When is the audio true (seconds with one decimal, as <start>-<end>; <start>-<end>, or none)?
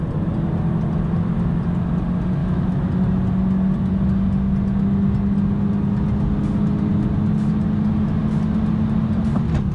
0.0-2.4; 2.9-9.7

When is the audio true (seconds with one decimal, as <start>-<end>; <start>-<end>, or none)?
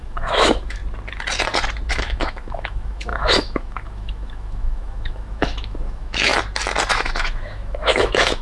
0.8-1.9; 6.3-6.9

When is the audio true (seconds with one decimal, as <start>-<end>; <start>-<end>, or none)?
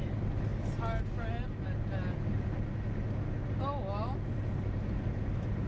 0.0-5.7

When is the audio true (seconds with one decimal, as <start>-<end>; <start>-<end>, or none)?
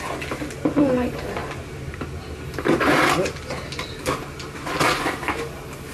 0.0-5.9